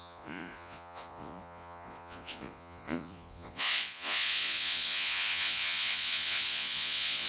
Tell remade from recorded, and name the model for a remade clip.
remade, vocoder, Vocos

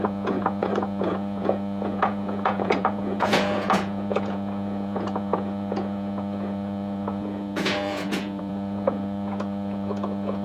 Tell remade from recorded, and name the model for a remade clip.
remade, vocoder, Vocos